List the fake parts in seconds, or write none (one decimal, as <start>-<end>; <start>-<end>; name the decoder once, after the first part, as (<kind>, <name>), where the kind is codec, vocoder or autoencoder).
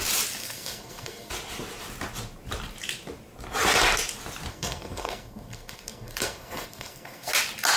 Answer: 0.4-1.3 (codec, SNAC); 4.5-7.3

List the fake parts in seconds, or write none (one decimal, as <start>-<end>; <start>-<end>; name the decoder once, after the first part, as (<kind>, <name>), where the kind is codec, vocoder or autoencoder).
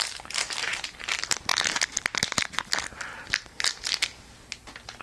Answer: none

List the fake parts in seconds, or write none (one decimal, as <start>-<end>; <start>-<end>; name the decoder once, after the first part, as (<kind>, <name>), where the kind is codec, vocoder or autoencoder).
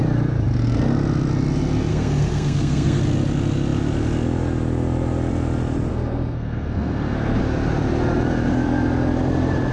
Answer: 1.9-3.0 (codec, SNAC); 5.9-7.4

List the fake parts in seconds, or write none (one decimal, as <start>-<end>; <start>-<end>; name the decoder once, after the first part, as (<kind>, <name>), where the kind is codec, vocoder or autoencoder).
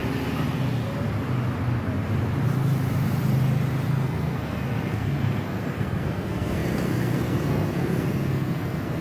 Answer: 3.9-9.0 (codec, SNAC)